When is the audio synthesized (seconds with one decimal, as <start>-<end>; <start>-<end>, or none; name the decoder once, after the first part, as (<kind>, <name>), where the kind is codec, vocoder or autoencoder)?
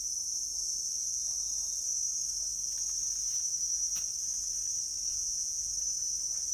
5.1-5.7 (vocoder, Vocos)